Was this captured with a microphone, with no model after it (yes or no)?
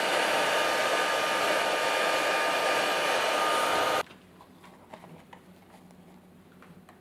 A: yes